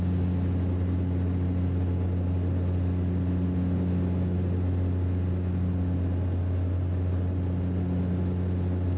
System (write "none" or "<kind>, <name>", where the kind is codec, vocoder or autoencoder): none